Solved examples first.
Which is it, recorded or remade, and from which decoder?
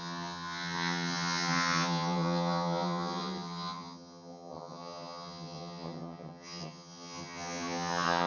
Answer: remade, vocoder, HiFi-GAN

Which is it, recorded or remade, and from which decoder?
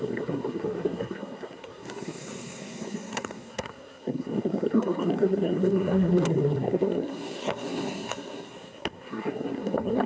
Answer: remade, codec, SNAC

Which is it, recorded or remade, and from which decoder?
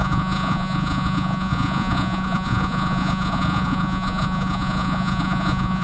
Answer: remade, vocoder, Vocos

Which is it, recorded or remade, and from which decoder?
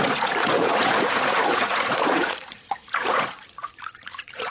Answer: remade, vocoder, Vocos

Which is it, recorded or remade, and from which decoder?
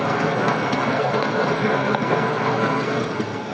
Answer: remade, codec, SNAC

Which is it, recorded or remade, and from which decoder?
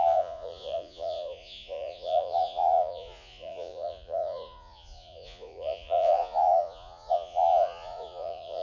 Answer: remade, vocoder, Vocos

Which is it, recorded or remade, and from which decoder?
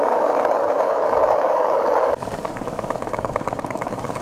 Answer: remade, codec, DAC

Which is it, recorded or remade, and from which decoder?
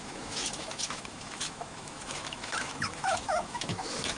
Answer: remade, autoencoder, DAC-VAE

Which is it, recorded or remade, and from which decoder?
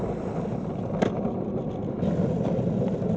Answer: recorded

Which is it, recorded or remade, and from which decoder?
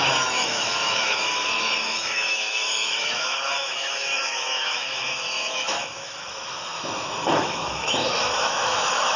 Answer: remade, autoencoder, DAC-VAE